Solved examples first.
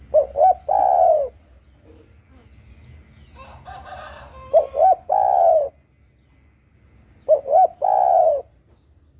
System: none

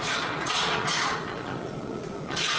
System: vocoder, Vocos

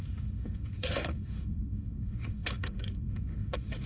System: autoencoder, DAC-VAE